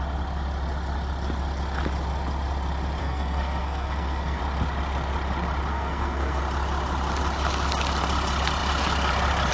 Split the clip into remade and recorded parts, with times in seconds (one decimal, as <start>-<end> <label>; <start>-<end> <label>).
0.0-3.0 recorded; 3.0-4.4 remade; 4.4-5.7 recorded; 5.7-6.4 remade; 6.4-9.5 recorded